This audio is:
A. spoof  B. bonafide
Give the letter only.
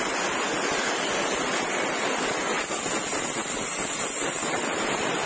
B